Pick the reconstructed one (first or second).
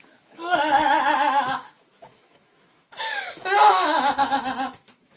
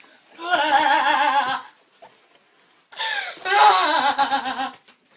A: first